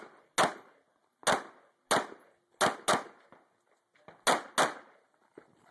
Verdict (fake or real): real